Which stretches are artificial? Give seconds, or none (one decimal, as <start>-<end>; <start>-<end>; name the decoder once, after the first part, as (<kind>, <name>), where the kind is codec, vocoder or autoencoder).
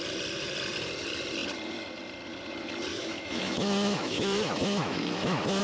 2.9-5.6 (autoencoder, DAC-VAE)